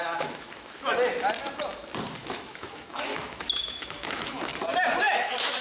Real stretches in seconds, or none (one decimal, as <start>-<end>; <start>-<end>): 0.9-2.2; 4.5-5.0